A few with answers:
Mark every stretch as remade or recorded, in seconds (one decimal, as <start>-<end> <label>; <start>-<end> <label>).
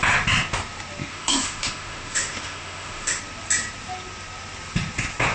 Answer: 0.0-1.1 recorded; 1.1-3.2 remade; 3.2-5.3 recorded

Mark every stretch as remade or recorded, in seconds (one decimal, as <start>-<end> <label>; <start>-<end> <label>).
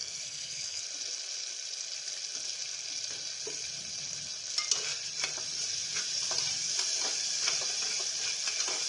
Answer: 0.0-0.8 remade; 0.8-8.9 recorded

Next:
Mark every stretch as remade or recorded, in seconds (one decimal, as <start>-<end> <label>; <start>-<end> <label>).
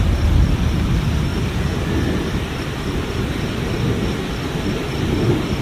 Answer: 0.0-5.6 recorded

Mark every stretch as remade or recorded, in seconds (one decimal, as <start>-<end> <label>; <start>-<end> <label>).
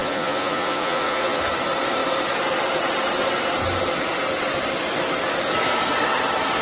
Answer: 0.0-1.4 remade; 1.4-6.6 recorded